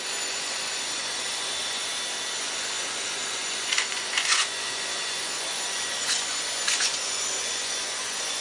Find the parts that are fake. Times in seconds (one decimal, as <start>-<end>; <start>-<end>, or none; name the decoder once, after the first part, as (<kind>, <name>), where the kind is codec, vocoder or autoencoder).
0.0-1.9 (vocoder, Vocos); 2.4-8.4